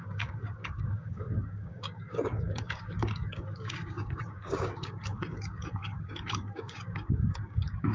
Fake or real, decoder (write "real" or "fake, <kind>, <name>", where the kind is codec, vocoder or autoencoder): fake, codec, DAC